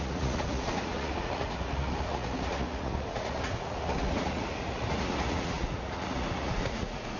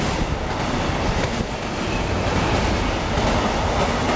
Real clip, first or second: second